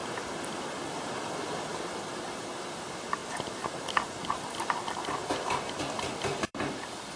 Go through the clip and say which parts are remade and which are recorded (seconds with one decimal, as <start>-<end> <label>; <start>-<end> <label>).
0.0-7.2 recorded